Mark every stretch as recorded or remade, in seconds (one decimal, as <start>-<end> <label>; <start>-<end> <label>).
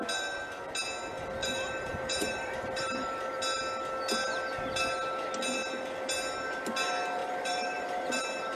0.0-1.4 recorded; 1.4-3.4 remade; 3.4-7.2 recorded; 7.2-8.2 remade; 8.2-8.6 recorded